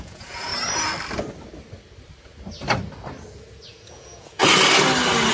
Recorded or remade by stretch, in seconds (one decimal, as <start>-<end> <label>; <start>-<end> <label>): 0.0-0.5 remade; 0.5-3.7 recorded; 3.7-4.4 remade; 4.4-5.3 recorded